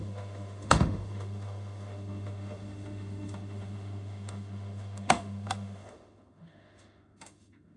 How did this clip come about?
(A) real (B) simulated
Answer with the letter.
B